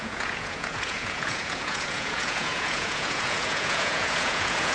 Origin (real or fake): fake